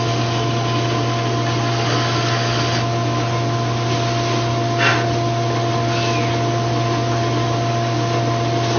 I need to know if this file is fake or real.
real